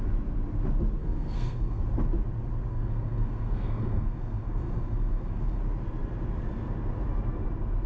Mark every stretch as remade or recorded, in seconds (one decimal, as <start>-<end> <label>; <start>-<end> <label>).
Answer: 0.0-1.0 recorded; 1.0-1.8 remade; 1.8-2.7 recorded; 2.7-5.6 remade; 5.6-7.9 recorded